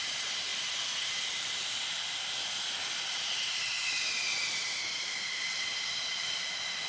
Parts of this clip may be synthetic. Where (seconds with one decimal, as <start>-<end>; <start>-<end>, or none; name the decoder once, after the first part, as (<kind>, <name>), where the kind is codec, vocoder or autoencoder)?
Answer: none